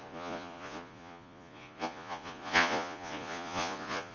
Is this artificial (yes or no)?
yes